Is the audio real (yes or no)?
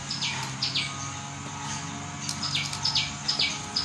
yes